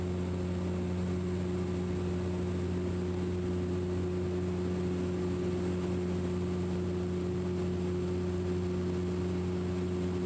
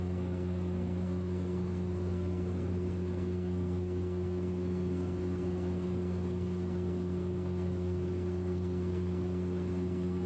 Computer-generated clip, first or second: second